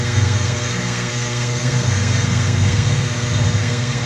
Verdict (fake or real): fake